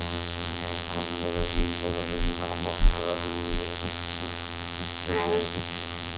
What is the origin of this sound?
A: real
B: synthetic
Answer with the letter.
B